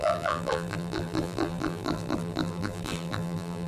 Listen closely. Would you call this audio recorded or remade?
remade